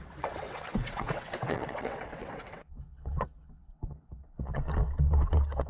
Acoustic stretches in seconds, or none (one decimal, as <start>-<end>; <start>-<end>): none